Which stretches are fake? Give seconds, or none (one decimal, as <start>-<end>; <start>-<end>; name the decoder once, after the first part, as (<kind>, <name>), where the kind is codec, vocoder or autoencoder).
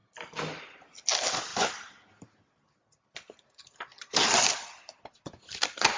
none